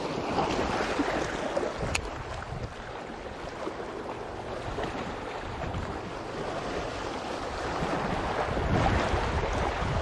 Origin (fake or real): real